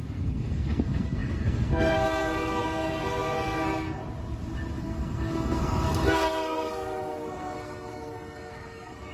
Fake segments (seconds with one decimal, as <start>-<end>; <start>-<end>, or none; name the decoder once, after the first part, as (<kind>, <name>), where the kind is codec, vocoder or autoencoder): 0.0-4.0 (codec, SNAC); 4.8-9.1